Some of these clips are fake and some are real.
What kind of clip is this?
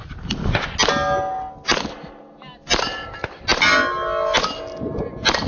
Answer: real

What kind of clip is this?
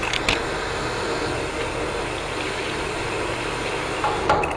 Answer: real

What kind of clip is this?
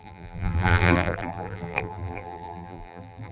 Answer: fake